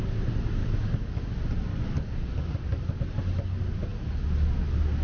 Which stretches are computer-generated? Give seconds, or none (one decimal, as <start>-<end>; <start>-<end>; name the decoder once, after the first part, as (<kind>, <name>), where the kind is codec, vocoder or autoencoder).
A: 0.6-1.2 (codec, DAC); 1.7-3.0